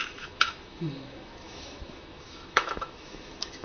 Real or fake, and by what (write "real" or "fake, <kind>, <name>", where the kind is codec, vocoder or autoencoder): fake, autoencoder, DAC-VAE